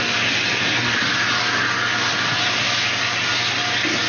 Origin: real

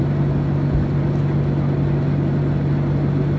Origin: real